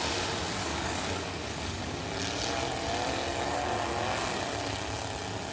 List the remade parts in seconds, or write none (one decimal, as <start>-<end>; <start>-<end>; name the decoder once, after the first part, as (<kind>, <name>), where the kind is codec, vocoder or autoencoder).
0.6-1.8 (codec, DAC)